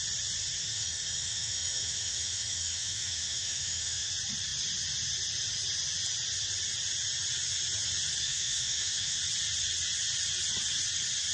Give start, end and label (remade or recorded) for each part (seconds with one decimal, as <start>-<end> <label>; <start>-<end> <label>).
0.0-0.6 recorded; 0.6-4.1 remade; 4.1-8.2 recorded; 8.2-9.2 remade; 9.2-11.3 recorded